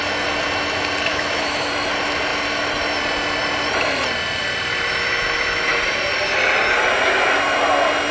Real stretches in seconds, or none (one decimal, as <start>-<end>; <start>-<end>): 0.0-1.1; 1.7-8.1